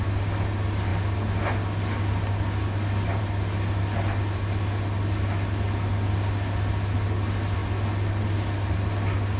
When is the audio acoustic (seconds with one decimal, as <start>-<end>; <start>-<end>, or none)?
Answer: 0.0-9.4